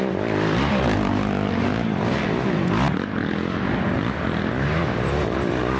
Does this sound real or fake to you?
real